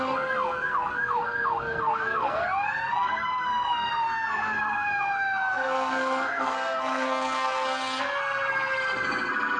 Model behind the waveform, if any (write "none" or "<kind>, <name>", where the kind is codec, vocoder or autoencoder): codec, SNAC